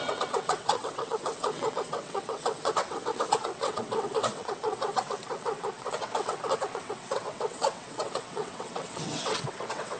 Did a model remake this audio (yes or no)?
yes